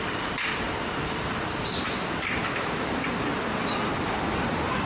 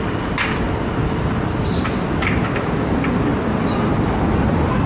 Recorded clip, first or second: second